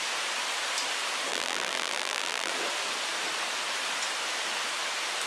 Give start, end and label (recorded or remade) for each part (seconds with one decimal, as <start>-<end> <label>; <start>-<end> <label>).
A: 0.0-1.3 recorded; 1.3-2.5 remade; 2.5-5.3 recorded